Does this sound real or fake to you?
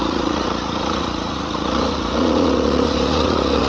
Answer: fake